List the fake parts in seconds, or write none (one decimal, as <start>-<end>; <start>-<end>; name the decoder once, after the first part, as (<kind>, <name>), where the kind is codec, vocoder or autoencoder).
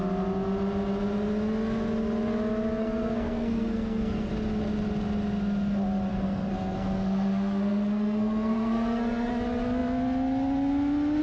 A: 2.8-4.3 (codec, SNAC); 6.1-9.3